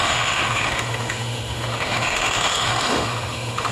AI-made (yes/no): yes